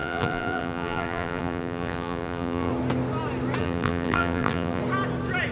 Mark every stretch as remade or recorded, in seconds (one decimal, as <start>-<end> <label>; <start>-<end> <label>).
0.0-2.7 remade; 2.7-3.6 recorded; 3.6-4.8 remade; 4.8-5.5 recorded